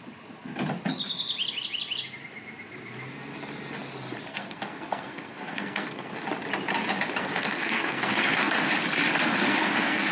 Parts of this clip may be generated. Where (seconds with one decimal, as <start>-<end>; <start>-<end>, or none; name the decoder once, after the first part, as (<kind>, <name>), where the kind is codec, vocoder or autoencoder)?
4.3-6.1 (codec, SNAC); 7.2-8.7; 9.3-10.1